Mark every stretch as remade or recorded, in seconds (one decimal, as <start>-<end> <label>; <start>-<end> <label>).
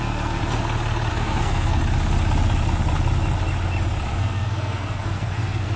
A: 0.0-0.4 remade; 0.4-1.1 recorded; 1.1-1.8 remade; 1.8-4.1 recorded; 4.1-5.8 remade